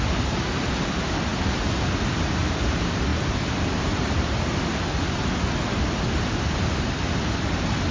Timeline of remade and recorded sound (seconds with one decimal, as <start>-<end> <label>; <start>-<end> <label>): 0.0-7.9 recorded